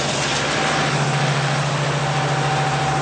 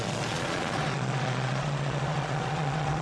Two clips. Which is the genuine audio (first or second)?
first